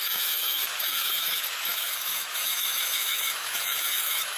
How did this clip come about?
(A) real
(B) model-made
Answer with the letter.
B